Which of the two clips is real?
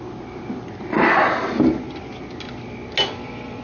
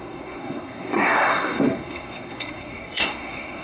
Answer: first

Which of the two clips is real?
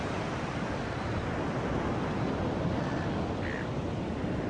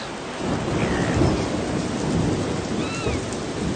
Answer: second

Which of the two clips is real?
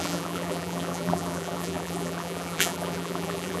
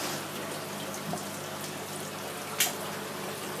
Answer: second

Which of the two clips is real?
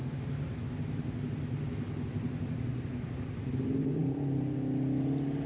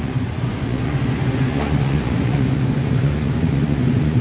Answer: first